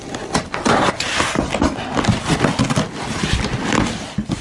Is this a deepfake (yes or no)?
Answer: no